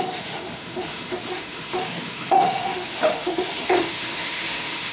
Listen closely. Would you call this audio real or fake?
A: fake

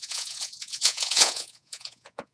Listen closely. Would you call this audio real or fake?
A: fake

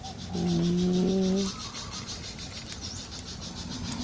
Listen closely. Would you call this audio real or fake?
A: real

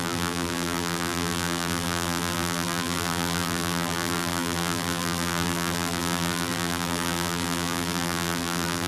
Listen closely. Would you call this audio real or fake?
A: fake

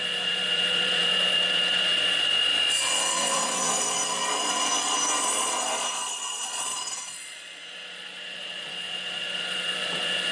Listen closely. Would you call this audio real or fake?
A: fake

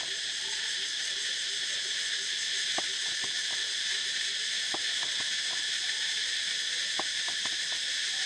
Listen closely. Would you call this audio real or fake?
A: real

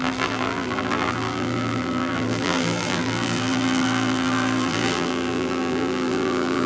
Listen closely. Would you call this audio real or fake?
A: fake